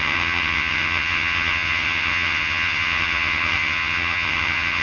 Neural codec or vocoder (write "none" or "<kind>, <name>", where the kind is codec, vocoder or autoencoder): vocoder, HiFi-GAN